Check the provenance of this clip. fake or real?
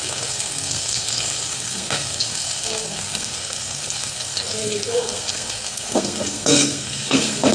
fake